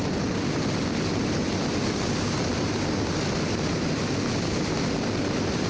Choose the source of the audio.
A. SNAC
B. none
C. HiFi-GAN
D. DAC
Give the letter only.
B